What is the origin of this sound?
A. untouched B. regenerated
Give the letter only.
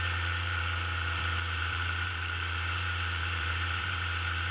B